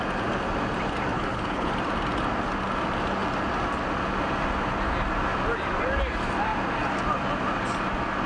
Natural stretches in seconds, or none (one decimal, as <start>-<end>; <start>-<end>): 0.0-1.1; 1.7-8.3